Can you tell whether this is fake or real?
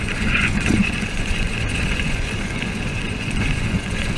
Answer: fake